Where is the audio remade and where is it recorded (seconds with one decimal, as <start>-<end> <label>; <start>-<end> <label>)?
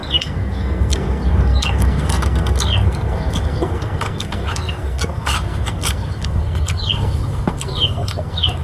0.0-8.6 remade